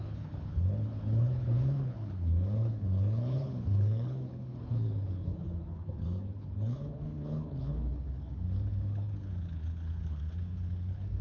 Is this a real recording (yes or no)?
no